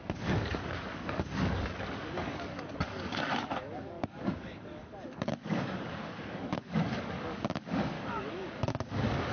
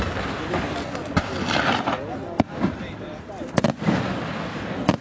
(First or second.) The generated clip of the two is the first